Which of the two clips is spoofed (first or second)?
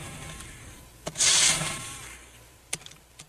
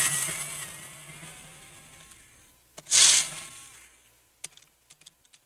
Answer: first